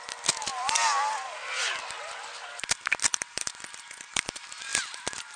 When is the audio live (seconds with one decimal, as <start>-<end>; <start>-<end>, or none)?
0.0-3.1; 4.3-4.7